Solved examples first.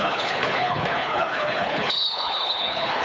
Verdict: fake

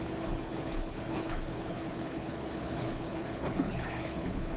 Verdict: fake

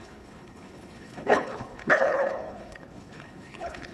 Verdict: fake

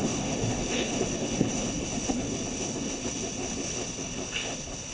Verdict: fake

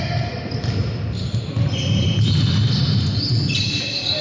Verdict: real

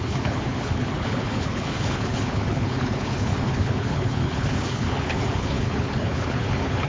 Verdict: fake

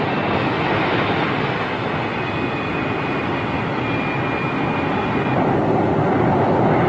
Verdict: real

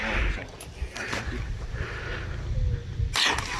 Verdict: real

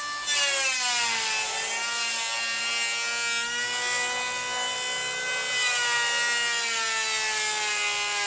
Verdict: real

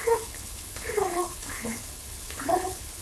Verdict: fake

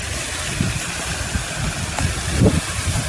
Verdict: real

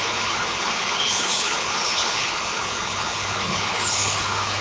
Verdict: fake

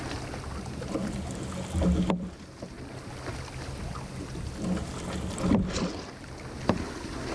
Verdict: real